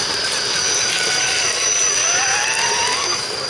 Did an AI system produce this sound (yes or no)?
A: no